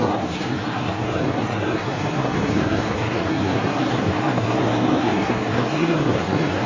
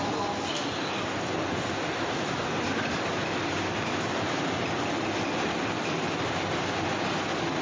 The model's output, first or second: first